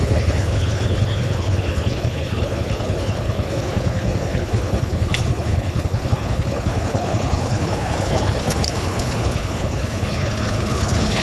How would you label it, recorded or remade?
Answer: remade